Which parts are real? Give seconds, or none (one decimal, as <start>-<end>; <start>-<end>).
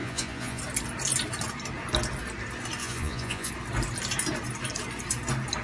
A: 0.6-2.8; 3.5-5.6